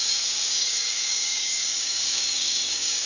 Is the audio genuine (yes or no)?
no